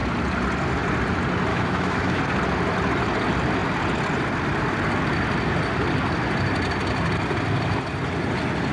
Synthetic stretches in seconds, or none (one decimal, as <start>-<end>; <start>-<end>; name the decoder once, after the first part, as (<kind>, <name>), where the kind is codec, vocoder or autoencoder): 1.5-2.2 (autoencoder, DAC-VAE)

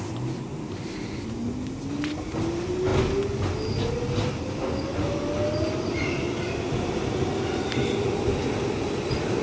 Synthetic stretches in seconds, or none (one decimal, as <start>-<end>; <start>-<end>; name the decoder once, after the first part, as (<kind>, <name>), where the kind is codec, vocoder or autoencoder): none

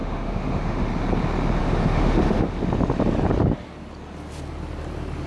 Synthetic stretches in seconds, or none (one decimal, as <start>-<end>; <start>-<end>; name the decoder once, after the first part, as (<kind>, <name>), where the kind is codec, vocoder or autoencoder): 0.0-0.9 (autoencoder, DAC-VAE); 1.6-2.6

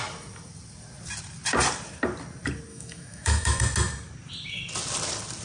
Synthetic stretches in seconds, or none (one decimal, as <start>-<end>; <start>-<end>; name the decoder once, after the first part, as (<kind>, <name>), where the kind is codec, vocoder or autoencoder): 2.7-3.6 (autoencoder, DAC-VAE)

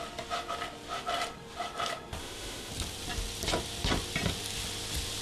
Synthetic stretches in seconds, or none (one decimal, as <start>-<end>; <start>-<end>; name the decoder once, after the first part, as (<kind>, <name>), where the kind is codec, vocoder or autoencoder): 2.2-2.7 (autoencoder, DAC-VAE)

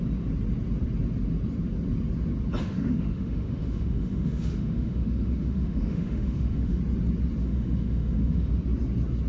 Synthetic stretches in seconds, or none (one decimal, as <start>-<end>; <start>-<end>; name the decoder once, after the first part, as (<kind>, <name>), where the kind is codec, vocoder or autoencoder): 2.6-6.8 (autoencoder, DAC-VAE); 7.4-8.6